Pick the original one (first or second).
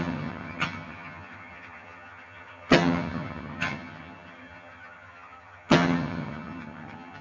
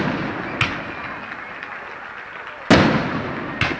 second